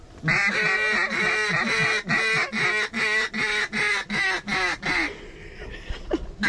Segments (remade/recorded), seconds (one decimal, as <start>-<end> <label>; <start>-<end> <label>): 0.0-6.5 recorded